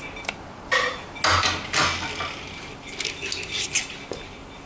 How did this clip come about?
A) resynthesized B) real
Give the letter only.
B